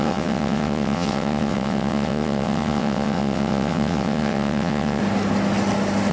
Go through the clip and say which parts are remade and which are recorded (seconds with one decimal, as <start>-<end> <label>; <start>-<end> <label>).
0.0-5.0 remade; 5.0-6.1 recorded